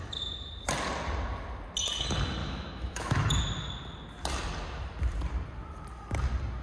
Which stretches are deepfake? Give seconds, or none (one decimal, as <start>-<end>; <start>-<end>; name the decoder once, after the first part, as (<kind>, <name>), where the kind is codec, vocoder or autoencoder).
2.4-3.4 (autoencoder, DAC-VAE)

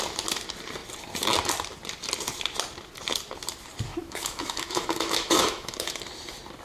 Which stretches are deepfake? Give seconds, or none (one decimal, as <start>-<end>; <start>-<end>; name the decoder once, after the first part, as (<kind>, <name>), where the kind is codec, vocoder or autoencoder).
3.9-6.0 (autoencoder, DAC-VAE)

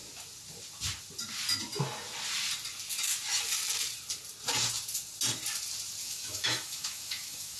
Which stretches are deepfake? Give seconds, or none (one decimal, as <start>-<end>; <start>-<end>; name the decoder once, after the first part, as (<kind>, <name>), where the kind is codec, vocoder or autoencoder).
6.0-7.6 (autoencoder, DAC-VAE)

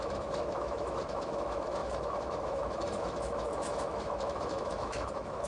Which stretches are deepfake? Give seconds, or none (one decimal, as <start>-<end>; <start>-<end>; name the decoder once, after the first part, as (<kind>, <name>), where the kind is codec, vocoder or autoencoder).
0.0-5.5 (autoencoder, DAC-VAE)

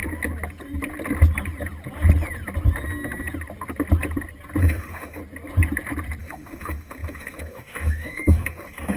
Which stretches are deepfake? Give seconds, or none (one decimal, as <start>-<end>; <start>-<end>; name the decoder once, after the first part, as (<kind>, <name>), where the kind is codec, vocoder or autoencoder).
4.6-5.2 (autoencoder, DAC-VAE); 6.2-9.0

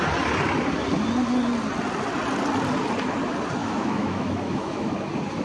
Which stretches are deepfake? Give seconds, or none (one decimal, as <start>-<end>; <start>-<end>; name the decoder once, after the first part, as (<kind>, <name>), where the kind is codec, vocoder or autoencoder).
3.6-4.9 (autoencoder, DAC-VAE)